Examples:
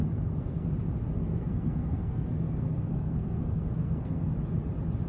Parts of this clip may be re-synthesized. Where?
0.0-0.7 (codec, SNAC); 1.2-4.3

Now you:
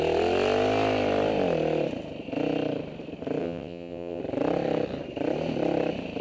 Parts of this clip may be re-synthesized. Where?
3.4-4.2 (vocoder, WaveNeXt)

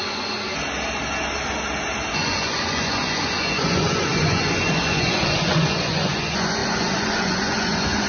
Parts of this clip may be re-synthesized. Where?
0.0-0.5 (vocoder, Vocos); 2.1-8.1

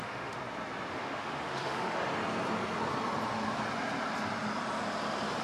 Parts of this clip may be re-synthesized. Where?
0.0-0.4 (autoencoder, DAC-VAE); 0.9-2.0

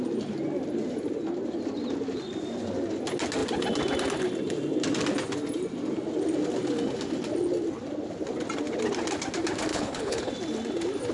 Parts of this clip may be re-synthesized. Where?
9.7-10.3 (codec, HILCodec)